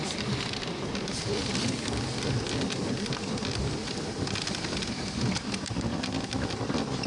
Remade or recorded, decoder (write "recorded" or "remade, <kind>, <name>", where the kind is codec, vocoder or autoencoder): recorded